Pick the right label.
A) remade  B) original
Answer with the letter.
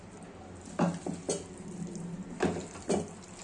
B